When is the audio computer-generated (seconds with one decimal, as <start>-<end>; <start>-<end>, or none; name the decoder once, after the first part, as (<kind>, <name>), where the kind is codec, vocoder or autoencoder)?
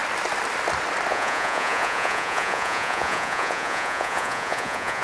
1.1-5.0 (vocoder, Vocos)